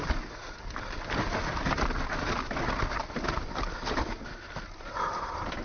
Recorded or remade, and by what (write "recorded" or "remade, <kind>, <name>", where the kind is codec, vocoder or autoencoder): recorded